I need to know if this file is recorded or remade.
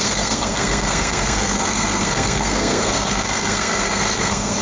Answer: remade